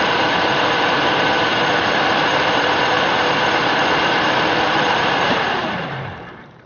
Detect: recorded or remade remade